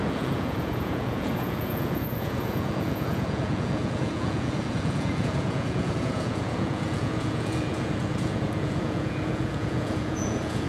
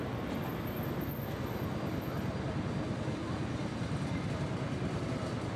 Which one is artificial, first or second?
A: first